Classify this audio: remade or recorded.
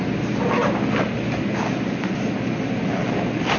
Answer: recorded